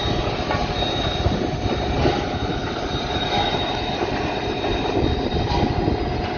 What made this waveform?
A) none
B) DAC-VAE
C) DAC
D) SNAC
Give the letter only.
A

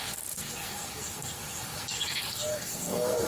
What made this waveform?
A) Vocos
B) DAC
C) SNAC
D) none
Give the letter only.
C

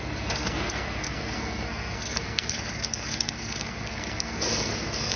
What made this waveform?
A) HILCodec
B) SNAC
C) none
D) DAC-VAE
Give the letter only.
B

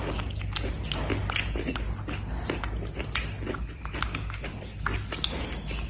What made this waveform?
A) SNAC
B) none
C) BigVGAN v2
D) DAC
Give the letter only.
B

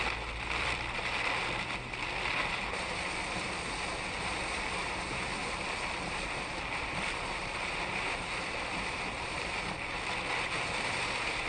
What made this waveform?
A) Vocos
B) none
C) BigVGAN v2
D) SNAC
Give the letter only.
B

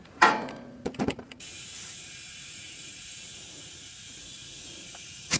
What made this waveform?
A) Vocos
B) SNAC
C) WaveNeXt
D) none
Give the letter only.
A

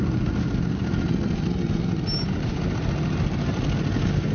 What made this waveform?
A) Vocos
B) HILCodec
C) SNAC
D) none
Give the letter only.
D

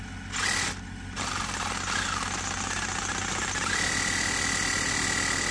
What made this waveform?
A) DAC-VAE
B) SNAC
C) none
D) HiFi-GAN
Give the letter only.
C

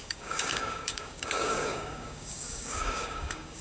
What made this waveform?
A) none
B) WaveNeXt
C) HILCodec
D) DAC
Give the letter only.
D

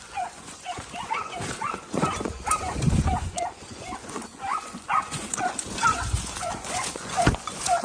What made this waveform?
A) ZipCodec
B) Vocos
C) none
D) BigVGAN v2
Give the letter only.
B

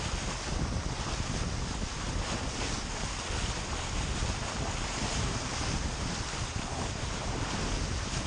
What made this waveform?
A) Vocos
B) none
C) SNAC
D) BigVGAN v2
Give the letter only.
B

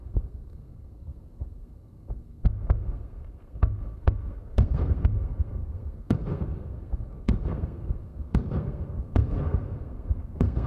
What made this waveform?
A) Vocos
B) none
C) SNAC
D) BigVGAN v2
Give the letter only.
C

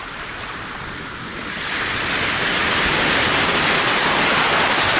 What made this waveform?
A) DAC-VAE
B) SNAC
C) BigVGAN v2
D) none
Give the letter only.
D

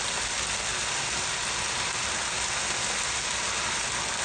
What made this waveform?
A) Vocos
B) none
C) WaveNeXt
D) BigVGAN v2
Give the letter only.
B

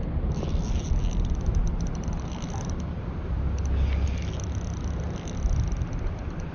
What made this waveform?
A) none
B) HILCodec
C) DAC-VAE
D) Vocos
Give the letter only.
A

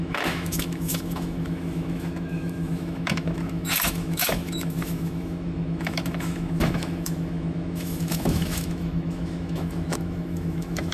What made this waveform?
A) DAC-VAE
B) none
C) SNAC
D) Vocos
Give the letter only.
A